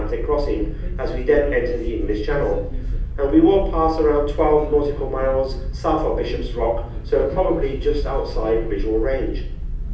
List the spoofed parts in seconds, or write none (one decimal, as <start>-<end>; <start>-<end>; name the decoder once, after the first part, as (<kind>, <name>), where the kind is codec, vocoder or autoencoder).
1.7-3.1 (autoencoder, DAC-VAE); 7.2-8.8